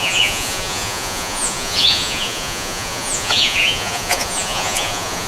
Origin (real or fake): fake